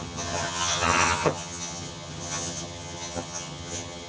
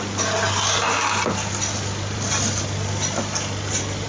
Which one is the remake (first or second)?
first